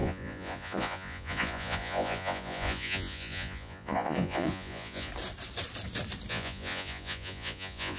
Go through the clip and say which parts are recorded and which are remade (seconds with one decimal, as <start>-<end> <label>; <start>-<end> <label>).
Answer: 0.0-5.1 remade; 5.1-6.3 recorded; 6.3-8.0 remade